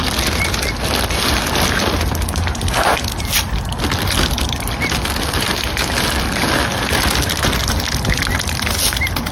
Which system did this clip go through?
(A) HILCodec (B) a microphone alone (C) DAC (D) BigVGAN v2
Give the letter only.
B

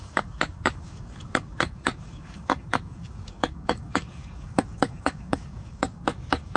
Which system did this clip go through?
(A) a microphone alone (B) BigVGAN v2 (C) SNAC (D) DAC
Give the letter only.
D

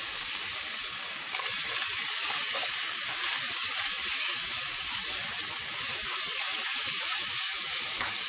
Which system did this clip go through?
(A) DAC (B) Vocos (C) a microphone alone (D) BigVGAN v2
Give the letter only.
A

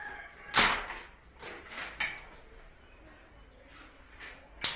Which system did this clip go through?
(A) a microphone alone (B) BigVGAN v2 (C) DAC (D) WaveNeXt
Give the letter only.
A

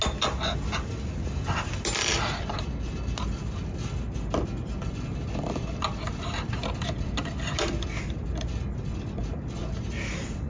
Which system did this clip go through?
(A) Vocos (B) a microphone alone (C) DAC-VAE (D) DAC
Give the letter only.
B